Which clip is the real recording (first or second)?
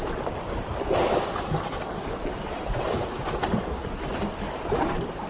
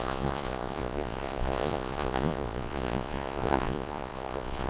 first